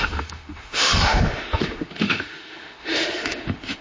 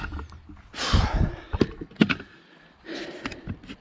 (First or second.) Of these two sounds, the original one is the second